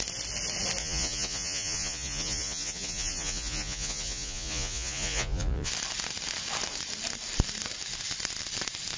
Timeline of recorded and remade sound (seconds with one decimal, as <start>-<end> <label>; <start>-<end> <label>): 0.0-0.8 recorded; 0.8-5.7 remade; 5.7-9.0 recorded